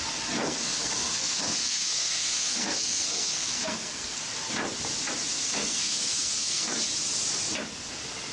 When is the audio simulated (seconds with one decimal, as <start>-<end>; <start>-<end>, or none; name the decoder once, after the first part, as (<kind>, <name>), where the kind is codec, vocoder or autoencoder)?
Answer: 0.4-4.2 (codec, SNAC); 5.3-6.8